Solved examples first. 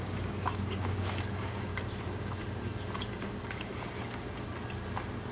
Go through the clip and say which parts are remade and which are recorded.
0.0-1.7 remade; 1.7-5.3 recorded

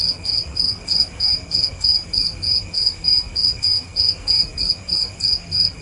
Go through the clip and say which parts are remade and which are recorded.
0.0-5.8 remade

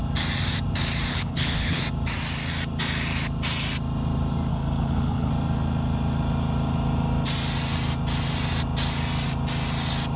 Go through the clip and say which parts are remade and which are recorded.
0.0-1.1 recorded; 1.1-1.8 remade; 1.8-4.5 recorded; 4.5-5.3 remade; 5.3-10.2 recorded

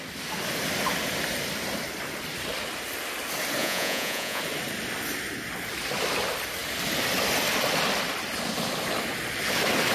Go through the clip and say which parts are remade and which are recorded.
0.0-3.6 recorded; 3.6-4.4 remade; 4.4-9.9 recorded

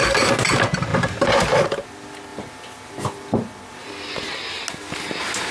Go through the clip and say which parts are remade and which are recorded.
0.0-2.3 recorded; 2.3-4.1 remade; 4.1-5.5 recorded

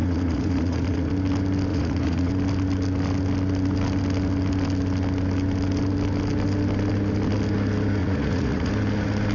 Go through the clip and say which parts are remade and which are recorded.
0.0-1.1 remade; 1.1-1.7 recorded; 1.7-2.3 remade; 2.3-8.0 recorded; 8.0-8.7 remade; 8.7-9.3 recorded

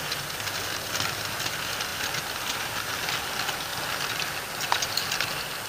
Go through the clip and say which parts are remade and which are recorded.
0.0-5.7 recorded